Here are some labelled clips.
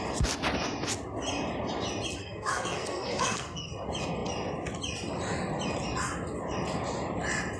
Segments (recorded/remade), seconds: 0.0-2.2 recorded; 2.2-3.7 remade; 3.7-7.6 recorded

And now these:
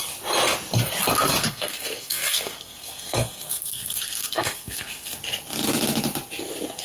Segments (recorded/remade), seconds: 0.0-1.4 recorded; 1.4-5.2 remade; 5.2-6.8 recorded

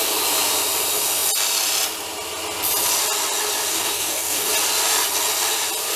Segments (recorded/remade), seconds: 0.0-3.7 recorded; 3.7-4.5 remade; 4.5-6.0 recorded

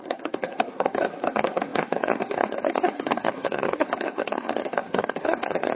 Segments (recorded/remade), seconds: 0.0-5.8 remade

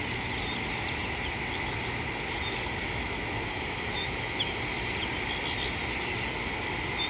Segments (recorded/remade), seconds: 0.0-2.8 recorded; 2.8-4.4 remade; 4.4-7.1 recorded